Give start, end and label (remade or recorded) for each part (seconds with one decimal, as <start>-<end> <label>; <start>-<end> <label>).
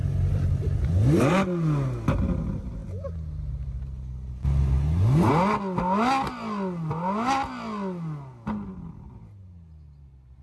0.0-0.9 remade; 0.9-10.4 recorded